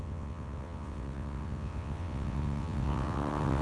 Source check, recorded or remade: remade